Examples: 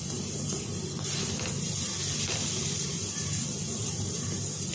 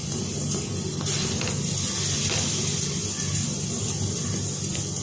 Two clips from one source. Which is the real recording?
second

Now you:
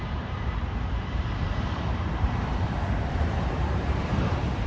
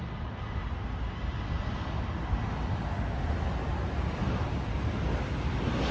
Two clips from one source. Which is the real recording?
second